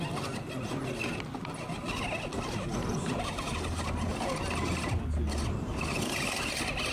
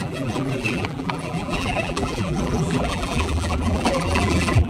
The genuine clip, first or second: first